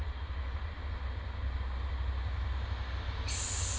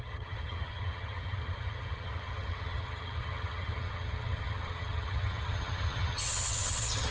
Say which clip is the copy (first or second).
second